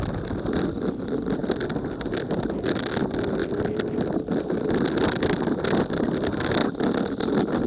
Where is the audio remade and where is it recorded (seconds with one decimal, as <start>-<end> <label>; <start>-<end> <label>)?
0.0-7.7 recorded